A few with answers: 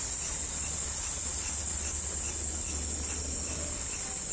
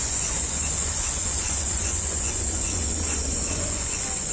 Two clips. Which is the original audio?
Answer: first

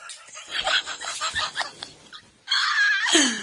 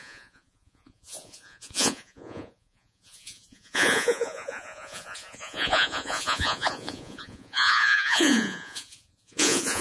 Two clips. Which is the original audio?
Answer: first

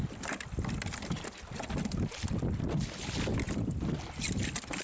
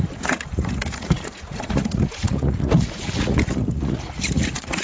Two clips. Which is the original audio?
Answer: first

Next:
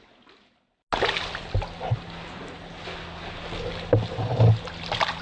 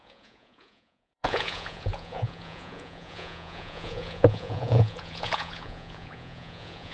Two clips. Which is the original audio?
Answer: first